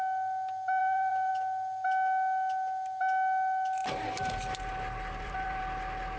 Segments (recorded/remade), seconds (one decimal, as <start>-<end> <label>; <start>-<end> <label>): 0.0-0.8 recorded; 0.8-1.3 remade; 1.3-3.8 recorded; 3.8-5.6 remade; 5.6-6.2 recorded